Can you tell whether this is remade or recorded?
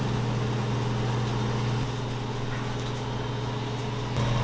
recorded